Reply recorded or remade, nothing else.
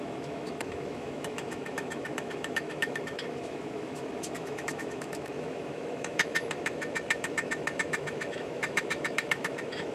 remade